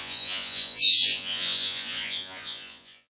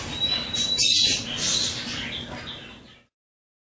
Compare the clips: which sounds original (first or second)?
second